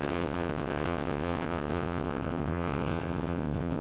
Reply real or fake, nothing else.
fake